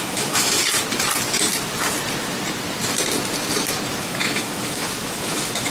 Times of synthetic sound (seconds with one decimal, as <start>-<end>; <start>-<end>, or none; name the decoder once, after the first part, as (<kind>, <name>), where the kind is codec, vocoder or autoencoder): 0.0-0.6 (autoencoder, DAC-VAE); 4.0-5.7